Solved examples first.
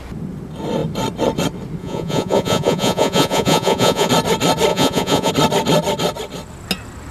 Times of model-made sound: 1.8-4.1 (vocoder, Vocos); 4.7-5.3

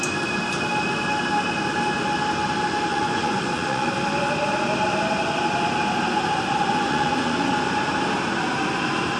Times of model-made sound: 2.9-3.9 (vocoder, Vocos); 6.7-7.5

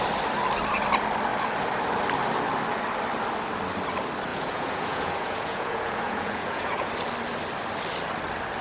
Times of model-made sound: 4.3-6.9 (vocoder, Vocos)

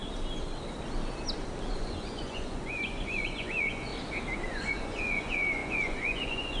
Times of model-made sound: 1.7-3.9 (vocoder, Vocos); 4.5-6.6

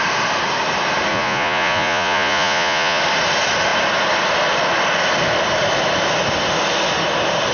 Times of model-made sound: 1.1-3.0 (vocoder, Vocos)